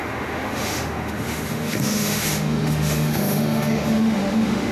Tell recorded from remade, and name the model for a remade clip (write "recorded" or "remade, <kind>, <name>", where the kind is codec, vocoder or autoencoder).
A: remade, autoencoder, DAC-VAE